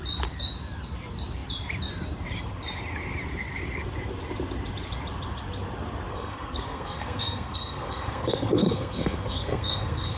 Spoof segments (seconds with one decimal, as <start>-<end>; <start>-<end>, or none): 6.1-10.2

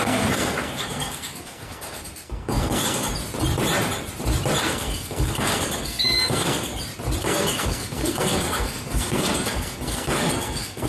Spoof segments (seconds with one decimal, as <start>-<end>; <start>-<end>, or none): 0.0-3.1; 4.6-6.7; 7.2-10.9

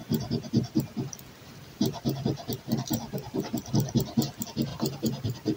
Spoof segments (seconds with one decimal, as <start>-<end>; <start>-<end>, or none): 4.7-5.6

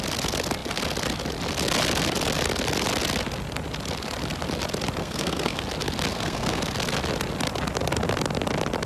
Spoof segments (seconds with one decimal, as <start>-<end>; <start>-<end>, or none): 5.0-5.6; 6.1-6.6

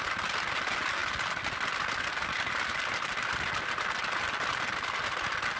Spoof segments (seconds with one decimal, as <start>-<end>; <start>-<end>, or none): none

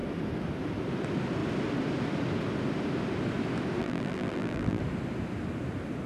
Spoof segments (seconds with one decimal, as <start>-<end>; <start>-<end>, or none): 3.8-4.8